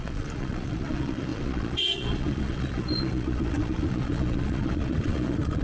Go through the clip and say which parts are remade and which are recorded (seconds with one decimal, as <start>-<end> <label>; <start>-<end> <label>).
0.0-5.6 remade